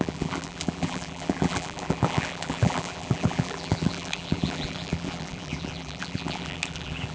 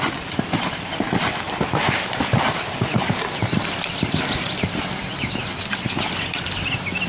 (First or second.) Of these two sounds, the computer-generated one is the first